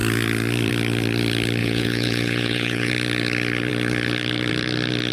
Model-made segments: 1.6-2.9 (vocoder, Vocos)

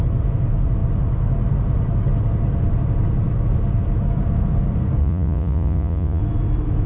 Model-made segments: 5.0-6.2 (vocoder, Vocos)

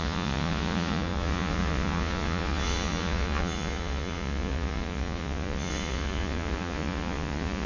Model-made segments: 0.0-7.7 (vocoder, Vocos)

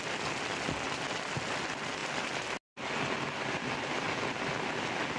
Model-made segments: none

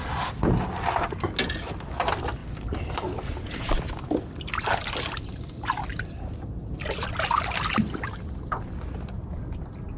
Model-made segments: none